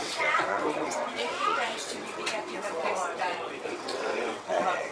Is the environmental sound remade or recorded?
remade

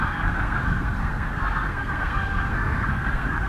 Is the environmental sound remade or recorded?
remade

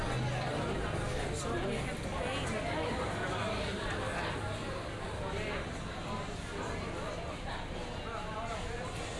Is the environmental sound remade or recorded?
recorded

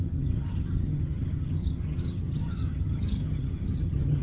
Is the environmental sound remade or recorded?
remade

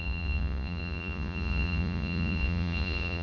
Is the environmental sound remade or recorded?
remade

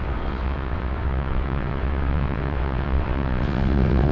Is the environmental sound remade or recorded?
remade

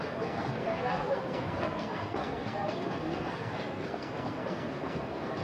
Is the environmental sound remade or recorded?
remade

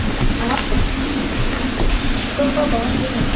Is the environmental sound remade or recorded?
recorded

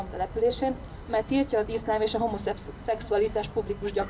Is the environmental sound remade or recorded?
recorded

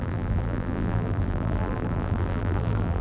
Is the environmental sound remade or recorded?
remade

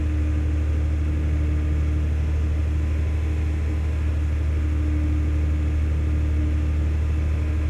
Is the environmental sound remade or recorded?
recorded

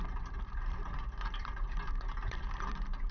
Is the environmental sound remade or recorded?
remade